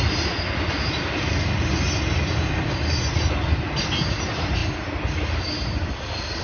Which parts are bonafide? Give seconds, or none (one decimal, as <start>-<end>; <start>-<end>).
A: 0.0-6.4